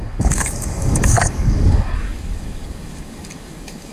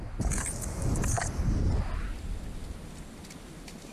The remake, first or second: first